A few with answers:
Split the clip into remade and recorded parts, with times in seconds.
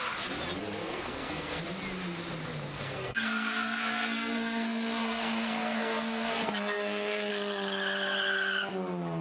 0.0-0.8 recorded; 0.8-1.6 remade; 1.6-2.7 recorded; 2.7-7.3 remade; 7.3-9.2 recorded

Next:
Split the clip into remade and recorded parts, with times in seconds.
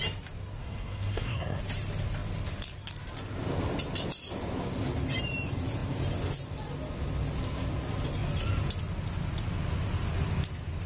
0.0-0.6 recorded; 0.6-1.6 remade; 1.6-10.9 recorded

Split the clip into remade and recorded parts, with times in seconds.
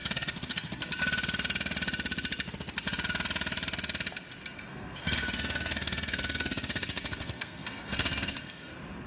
0.0-0.9 remade; 0.9-4.7 recorded; 4.7-8.7 remade; 8.7-9.1 recorded